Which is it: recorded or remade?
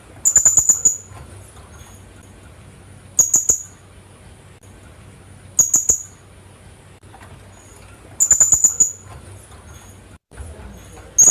recorded